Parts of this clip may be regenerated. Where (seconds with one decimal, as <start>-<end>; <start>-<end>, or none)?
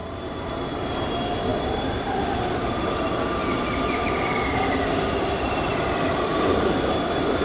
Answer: 1.5-3.0; 3.4-4.4; 5.7-7.0